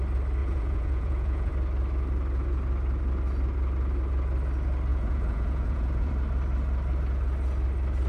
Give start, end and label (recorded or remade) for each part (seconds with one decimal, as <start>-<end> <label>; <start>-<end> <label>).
0.0-0.4 recorded; 0.4-1.5 remade; 1.5-4.9 recorded; 4.9-6.1 remade; 6.1-8.1 recorded